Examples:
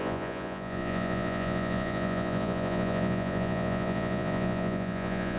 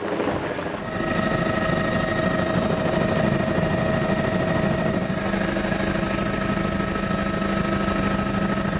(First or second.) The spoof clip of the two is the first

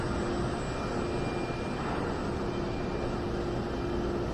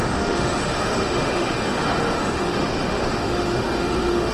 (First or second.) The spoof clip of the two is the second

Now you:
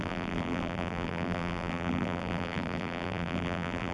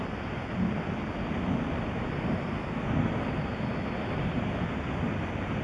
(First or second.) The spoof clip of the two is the first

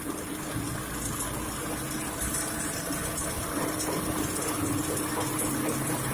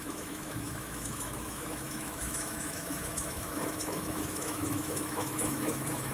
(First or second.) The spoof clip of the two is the second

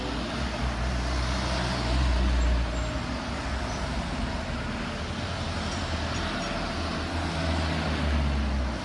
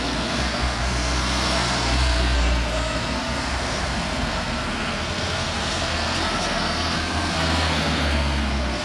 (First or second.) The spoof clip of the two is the second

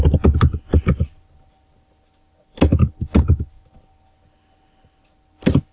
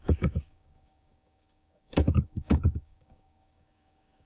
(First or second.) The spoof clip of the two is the second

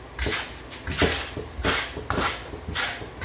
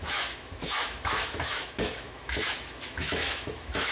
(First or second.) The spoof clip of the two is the second